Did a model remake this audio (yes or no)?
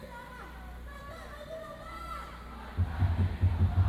no